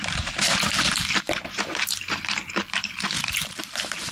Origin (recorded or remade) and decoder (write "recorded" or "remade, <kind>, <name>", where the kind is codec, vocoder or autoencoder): remade, vocoder, BigVGAN v2